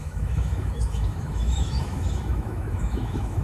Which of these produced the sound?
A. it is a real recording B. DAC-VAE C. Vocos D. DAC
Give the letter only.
B